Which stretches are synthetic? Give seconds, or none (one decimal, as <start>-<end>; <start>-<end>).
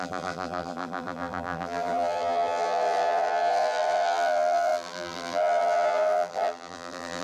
0.0-7.2